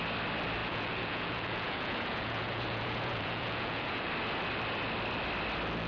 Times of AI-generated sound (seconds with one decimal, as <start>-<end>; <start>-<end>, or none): 0.6-4.1